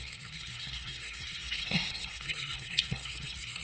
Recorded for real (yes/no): no